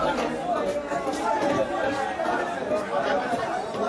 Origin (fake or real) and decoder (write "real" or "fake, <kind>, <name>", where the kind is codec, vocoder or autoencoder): real